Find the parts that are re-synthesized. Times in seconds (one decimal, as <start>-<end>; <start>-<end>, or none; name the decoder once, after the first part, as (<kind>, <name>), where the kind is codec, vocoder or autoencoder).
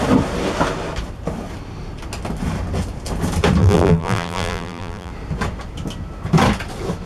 3.6-5.1 (vocoder, BigVGAN v2)